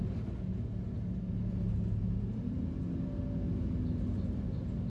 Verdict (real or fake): real